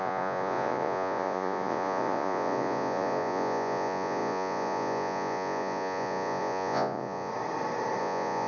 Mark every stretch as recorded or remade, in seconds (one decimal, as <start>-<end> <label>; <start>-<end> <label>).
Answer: 0.0-7.3 remade; 7.3-8.0 recorded; 8.0-8.5 remade